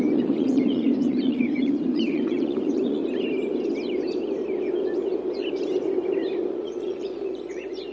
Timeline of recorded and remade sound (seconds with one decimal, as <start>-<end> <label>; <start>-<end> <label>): 0.0-3.0 remade; 3.0-6.5 recorded; 6.5-7.9 remade